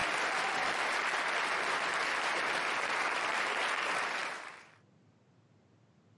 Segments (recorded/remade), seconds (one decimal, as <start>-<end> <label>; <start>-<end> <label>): 0.0-3.5 remade; 3.5-6.2 recorded